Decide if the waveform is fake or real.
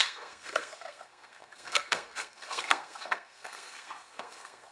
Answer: fake